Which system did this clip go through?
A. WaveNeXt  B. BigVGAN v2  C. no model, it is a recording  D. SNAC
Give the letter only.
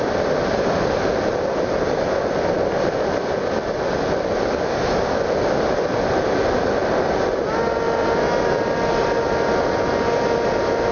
C